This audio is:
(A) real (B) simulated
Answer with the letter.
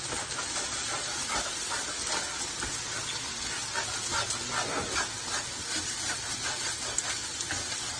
A